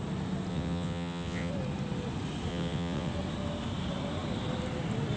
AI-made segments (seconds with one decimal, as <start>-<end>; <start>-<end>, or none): 0.5-1.5; 2.5-3.1